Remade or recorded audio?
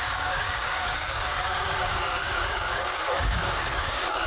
remade